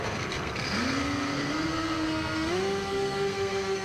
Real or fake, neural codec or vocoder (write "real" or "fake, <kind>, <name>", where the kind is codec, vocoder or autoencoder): fake, codec, SNAC